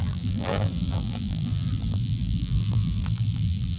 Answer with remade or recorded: remade